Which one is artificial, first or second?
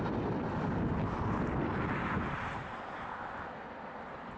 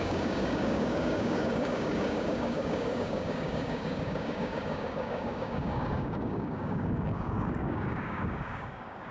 second